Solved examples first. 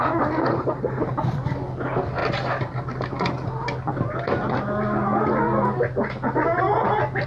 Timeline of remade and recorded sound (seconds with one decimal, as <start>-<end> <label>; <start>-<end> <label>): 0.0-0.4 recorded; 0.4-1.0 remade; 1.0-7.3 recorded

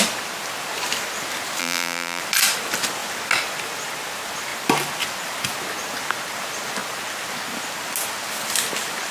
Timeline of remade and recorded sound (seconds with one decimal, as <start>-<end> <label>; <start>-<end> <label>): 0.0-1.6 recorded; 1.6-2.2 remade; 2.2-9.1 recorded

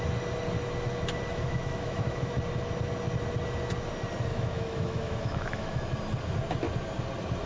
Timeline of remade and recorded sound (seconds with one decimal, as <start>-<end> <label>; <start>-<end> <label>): 0.0-1.3 recorded; 1.3-2.3 remade; 2.3-4.3 recorded; 4.3-5.9 remade; 5.9-7.5 recorded

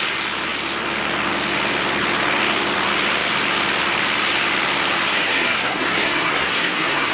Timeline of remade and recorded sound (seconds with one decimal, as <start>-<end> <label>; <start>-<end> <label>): 0.0-5.1 recorded; 5.1-7.1 remade

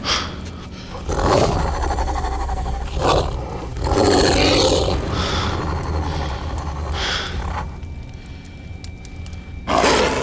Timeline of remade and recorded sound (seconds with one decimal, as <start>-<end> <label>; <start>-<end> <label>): 0.0-2.0 recorded; 2.0-2.8 remade; 2.8-10.2 recorded

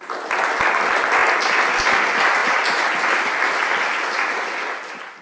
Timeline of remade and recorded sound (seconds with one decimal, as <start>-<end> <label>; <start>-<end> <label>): 0.0-5.2 recorded

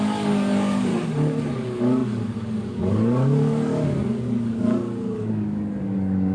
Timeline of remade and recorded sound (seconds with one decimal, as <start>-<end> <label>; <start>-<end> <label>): 0.0-0.9 remade; 0.9-1.5 recorded; 1.5-6.3 remade

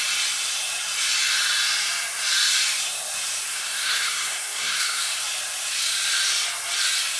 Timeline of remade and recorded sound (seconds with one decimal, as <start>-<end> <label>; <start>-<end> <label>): 0.0-3.5 recorded; 3.5-5.2 remade; 5.2-7.2 recorded